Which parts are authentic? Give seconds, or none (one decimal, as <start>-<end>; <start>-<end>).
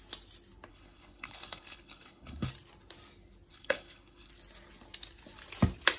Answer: 0.0-0.7; 2.5-3.5; 4.3-6.0